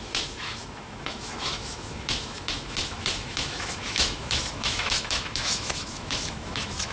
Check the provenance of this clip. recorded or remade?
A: remade